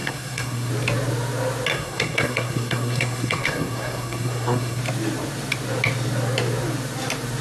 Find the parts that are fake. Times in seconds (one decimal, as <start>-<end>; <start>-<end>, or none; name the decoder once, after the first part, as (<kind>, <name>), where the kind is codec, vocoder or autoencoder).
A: 0.0-0.7 (codec, SNAC); 1.7-4.8